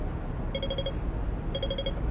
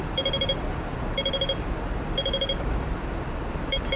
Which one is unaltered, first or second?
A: first